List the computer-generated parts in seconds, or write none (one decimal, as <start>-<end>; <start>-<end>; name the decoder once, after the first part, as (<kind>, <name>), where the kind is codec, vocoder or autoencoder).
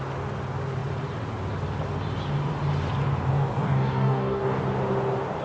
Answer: 3.3-4.6 (codec, DAC)